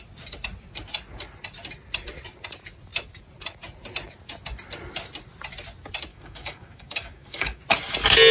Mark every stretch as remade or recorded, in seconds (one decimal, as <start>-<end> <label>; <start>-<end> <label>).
0.0-6.1 recorded; 6.1-7.6 remade; 7.6-8.3 recorded